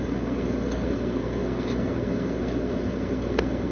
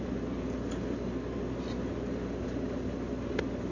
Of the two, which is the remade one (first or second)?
first